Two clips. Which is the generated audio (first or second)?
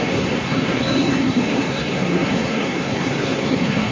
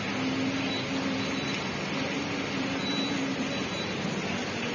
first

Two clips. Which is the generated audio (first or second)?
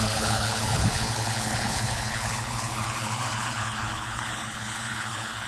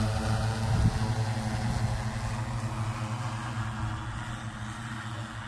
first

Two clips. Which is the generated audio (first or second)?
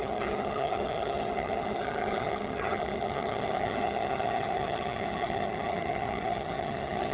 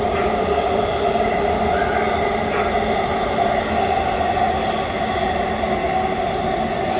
first